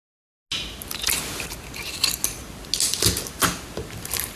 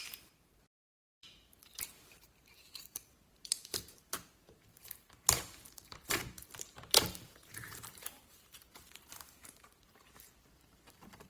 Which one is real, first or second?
first